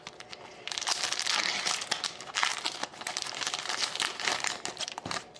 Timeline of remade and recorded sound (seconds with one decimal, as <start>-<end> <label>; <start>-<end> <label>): 0.0-5.4 recorded